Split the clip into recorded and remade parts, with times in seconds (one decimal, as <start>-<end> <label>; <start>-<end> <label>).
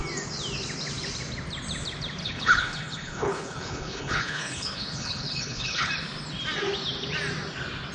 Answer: 0.0-2.2 recorded; 2.2-5.9 remade; 5.9-7.9 recorded